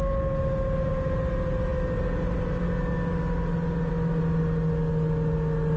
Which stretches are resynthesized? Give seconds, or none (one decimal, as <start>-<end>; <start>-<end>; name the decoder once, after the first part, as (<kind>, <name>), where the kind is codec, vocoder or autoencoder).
none